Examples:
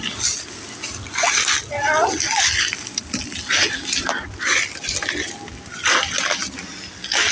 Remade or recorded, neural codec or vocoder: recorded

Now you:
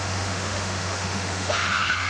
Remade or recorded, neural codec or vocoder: remade, autoencoder, DAC-VAE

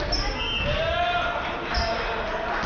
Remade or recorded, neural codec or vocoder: recorded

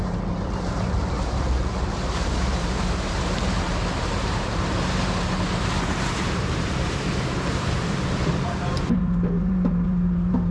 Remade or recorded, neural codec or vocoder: remade, vocoder, BigVGAN v2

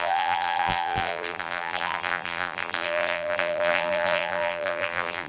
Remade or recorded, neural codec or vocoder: remade, vocoder, BigVGAN v2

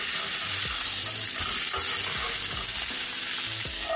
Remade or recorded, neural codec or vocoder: recorded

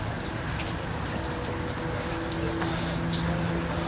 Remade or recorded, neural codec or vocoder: recorded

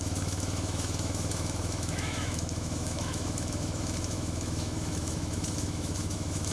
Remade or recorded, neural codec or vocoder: remade, autoencoder, DAC-VAE